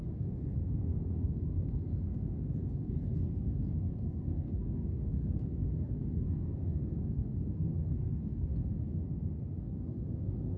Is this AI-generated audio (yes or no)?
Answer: yes